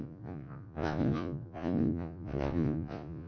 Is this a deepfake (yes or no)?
yes